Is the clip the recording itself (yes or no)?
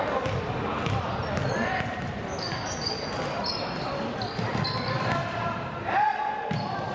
yes